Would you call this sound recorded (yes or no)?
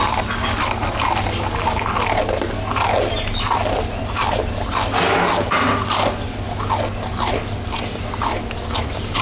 yes